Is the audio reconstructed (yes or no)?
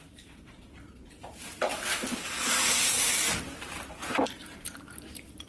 yes